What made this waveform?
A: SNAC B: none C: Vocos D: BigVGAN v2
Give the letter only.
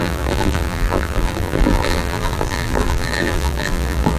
D